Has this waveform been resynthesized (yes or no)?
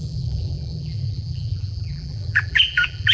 yes